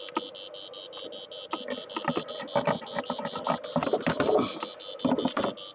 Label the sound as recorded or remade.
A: recorded